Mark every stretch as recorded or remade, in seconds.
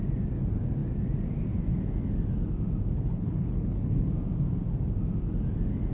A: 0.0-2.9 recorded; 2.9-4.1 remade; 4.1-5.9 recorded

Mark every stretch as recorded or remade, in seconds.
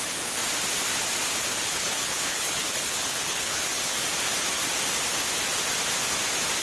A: 0.0-0.4 remade; 0.4-1.4 recorded; 1.4-4.0 remade; 4.0-6.6 recorded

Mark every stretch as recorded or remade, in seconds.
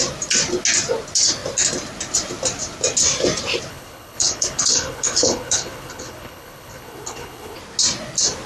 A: 0.0-3.7 recorded; 3.7-7.6 remade; 7.6-8.5 recorded